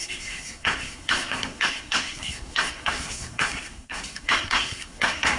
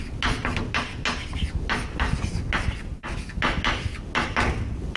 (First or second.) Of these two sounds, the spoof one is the first